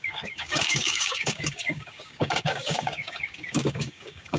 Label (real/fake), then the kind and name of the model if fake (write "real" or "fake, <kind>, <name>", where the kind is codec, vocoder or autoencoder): fake, codec, DAC